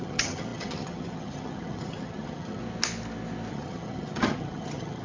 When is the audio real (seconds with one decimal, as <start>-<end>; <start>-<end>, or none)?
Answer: 2.6-3.5